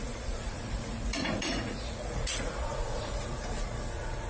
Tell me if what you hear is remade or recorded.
remade